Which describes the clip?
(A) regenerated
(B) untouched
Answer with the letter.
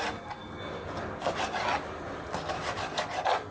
B